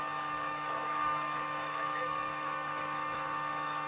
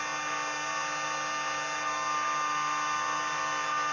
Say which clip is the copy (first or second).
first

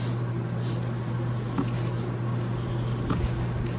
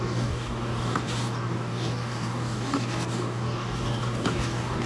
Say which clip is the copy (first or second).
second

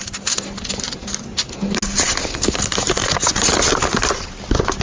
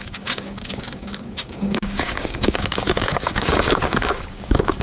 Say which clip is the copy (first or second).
second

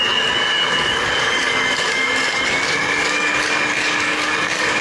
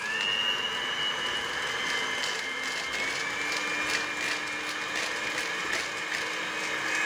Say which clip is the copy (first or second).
first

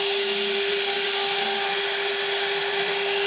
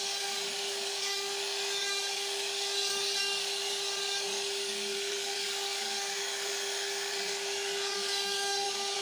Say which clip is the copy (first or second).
second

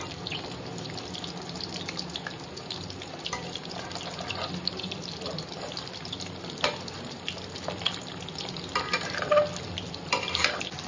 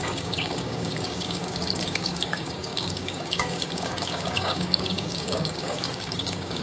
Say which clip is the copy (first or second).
second